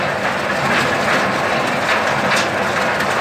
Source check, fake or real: real